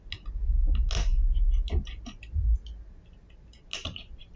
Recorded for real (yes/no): yes